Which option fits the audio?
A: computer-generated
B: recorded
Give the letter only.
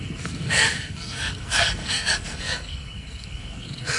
A